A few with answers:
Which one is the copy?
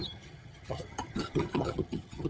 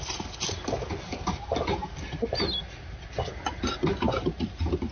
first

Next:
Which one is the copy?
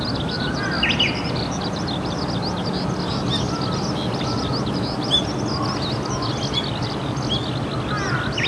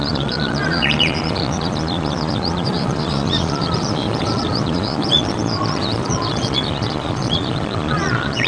second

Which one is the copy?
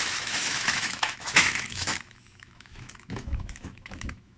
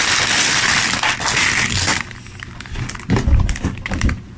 first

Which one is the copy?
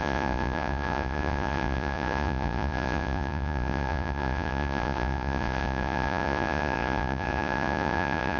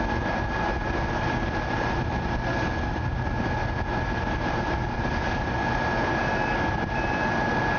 first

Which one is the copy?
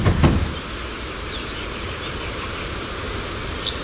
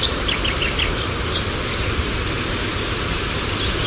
second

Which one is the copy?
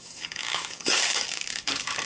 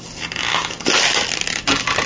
first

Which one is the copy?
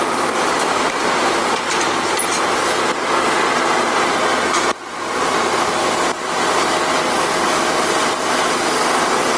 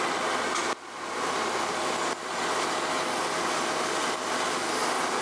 first